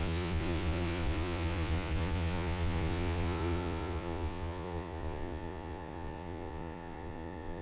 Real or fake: fake